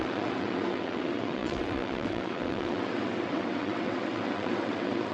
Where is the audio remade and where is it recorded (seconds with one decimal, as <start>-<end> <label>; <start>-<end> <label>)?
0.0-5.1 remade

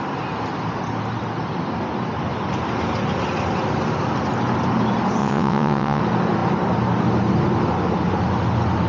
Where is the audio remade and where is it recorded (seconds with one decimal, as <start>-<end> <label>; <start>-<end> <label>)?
0.0-5.2 recorded; 5.2-6.0 remade; 6.0-8.9 recorded

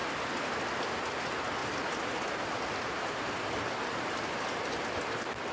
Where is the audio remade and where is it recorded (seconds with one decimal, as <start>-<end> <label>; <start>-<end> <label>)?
0.0-5.5 recorded